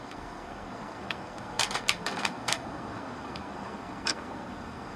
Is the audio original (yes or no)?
no